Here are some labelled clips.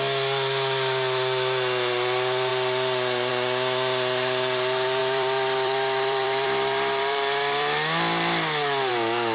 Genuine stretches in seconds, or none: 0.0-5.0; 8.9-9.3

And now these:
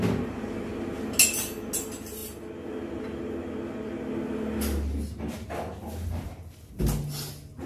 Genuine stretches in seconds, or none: 0.0-7.7

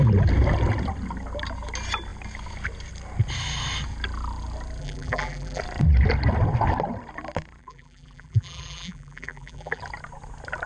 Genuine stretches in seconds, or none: 0.0-4.8; 5.6-7.6; 9.8-10.7

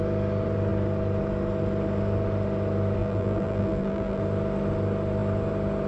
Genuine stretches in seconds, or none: 0.0-3.0; 4.2-5.9